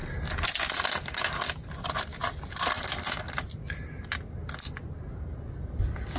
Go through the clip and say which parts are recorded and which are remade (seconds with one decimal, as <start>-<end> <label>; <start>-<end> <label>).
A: 0.0-6.2 recorded